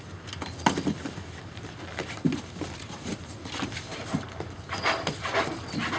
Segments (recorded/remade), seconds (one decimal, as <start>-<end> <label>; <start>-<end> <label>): 0.0-6.0 recorded

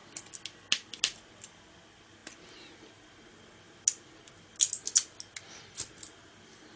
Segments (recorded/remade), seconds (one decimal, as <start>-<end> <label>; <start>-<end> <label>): 0.0-6.8 recorded

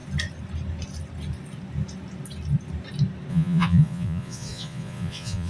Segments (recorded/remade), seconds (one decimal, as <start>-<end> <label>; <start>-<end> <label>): 0.0-3.3 recorded; 3.3-5.5 remade